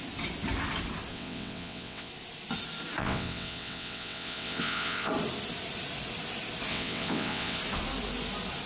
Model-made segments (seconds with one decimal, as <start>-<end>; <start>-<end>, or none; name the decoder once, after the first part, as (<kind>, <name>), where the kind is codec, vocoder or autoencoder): 1.1-2.1 (vocoder, WaveNeXt); 3.0-5.1; 6.7-7.6